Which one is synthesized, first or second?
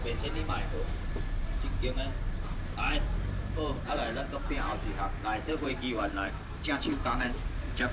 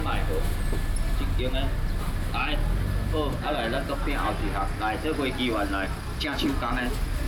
first